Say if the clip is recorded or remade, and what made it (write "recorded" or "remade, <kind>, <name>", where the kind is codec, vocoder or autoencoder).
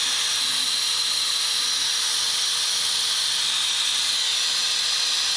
recorded